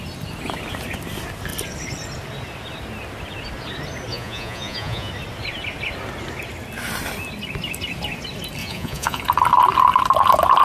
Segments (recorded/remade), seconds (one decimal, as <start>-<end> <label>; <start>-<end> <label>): 0.0-4.1 recorded; 4.1-5.1 remade; 5.1-8.6 recorded; 8.6-9.2 remade; 9.2-10.6 recorded